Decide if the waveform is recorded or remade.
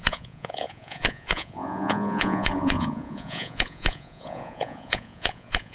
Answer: remade